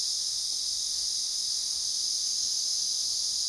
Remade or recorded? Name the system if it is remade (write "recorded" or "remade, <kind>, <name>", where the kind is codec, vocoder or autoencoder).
remade, autoencoder, DAC-VAE